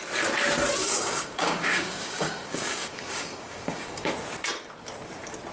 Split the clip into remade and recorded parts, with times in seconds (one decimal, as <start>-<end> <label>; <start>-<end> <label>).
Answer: 0.0-0.8 recorded; 0.8-4.1 remade; 4.1-5.5 recorded